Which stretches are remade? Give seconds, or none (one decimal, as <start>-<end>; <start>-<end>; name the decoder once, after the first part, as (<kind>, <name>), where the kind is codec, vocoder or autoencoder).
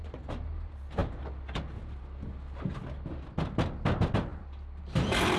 none